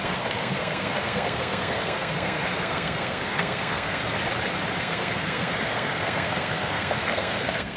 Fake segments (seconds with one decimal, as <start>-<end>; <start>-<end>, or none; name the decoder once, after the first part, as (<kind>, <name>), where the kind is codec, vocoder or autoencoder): 0.0-4.0 (codec, SNAC); 4.8-7.8